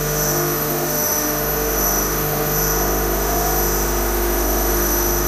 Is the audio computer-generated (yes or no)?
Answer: yes